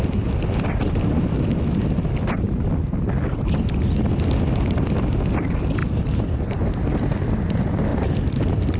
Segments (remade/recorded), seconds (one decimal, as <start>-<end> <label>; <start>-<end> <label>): 0.0-3.3 recorded; 3.3-4.1 remade; 4.1-7.9 recorded; 7.9-8.8 remade